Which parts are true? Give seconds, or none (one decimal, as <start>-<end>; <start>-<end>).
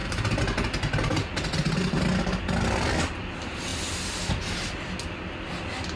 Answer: 0.0-6.0